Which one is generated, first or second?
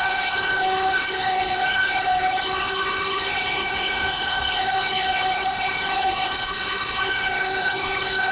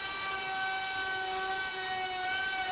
first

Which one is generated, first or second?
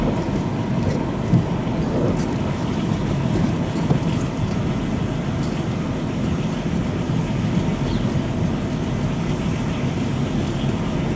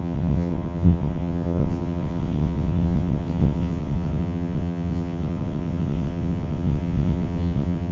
second